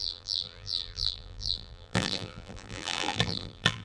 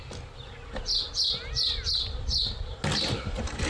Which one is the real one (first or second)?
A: second